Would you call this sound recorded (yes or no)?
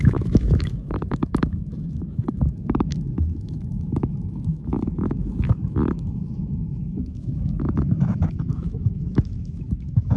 no